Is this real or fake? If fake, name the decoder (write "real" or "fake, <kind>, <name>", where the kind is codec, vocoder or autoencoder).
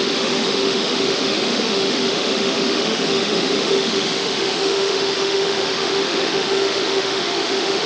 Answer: fake, autoencoder, DAC-VAE